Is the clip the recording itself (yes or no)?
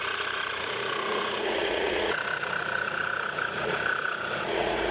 no